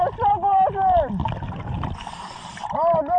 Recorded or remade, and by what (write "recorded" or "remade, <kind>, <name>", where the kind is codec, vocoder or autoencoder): recorded